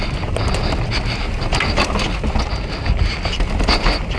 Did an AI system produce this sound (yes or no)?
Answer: no